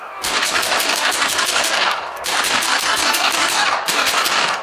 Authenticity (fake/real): fake